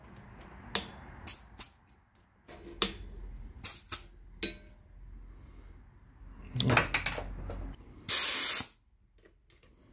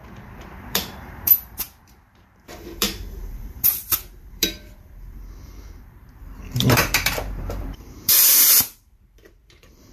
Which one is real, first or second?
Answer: first